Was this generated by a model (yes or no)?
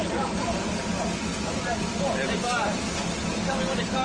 no